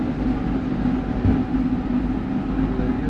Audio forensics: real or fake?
real